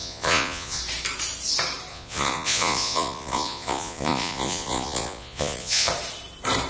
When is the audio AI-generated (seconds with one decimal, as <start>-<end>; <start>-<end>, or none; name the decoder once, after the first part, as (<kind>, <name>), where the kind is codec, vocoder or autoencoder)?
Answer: 0.0-0.8 (vocoder, Vocos); 1.9-5.9